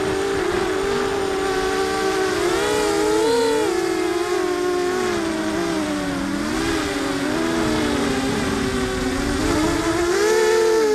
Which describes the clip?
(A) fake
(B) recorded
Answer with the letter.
B